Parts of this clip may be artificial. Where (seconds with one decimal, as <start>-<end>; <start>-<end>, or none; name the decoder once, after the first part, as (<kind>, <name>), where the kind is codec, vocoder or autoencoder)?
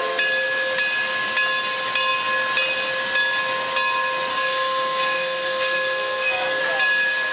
4.3-6.6 (codec, SNAC)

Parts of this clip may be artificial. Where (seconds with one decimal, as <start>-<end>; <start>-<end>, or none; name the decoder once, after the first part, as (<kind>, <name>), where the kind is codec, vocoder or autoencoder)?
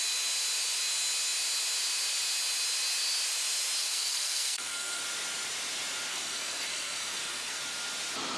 3.8-5.0 (codec, SNAC); 6.1-7.6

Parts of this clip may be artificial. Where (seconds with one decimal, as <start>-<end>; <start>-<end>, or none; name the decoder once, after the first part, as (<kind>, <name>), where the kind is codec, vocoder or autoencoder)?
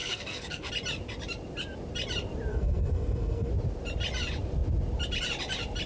0.0-0.7 (codec, SNAC); 2.5-3.5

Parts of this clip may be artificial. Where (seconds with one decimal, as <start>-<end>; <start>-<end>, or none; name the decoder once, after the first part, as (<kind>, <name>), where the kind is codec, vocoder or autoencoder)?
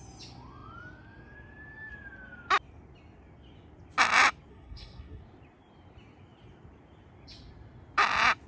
4.5-5.2 (codec, SNAC)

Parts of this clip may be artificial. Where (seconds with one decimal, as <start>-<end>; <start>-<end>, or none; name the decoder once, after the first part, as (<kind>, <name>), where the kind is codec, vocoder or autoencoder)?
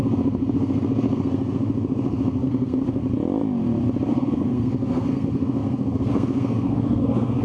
0.0-3.0 (codec, SNAC); 4.1-7.4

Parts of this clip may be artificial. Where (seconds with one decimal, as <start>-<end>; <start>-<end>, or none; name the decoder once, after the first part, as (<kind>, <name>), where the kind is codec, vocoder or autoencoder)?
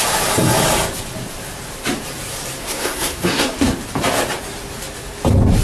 2.6-3.8 (codec, SNAC)